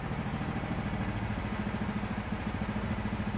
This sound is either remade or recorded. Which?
recorded